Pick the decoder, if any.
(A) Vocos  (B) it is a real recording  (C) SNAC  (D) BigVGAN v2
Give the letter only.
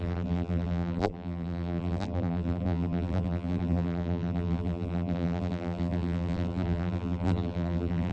D